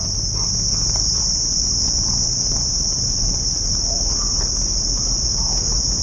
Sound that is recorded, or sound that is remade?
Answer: recorded